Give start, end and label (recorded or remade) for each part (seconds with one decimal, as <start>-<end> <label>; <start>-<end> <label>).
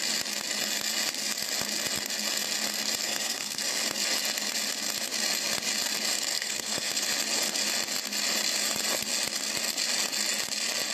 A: 0.0-3.0 recorded; 3.0-3.6 remade; 3.6-6.3 recorded; 6.3-6.9 remade; 6.9-10.9 recorded